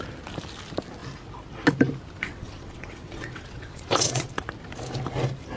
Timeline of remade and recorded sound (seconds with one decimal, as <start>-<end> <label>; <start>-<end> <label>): 0.0-2.2 recorded; 2.2-4.3 remade; 4.3-5.6 recorded